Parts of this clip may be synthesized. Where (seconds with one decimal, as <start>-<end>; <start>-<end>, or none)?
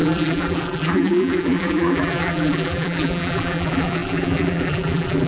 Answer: 0.0-5.3